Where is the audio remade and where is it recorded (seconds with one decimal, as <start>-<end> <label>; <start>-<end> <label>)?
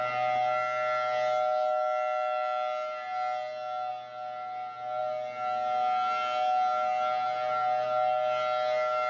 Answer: 0.0-9.1 recorded